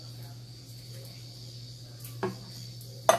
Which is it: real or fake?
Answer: real